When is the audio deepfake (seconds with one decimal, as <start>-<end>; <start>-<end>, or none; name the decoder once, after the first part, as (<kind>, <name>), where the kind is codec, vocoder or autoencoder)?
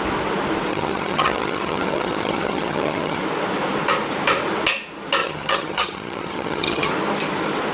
0.7-3.2 (vocoder, HiFi-GAN); 5.2-6.9